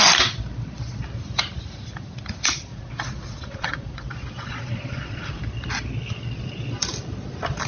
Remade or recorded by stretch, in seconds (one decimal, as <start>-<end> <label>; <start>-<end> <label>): 0.0-2.7 recorded; 2.7-5.4 remade; 5.4-7.7 recorded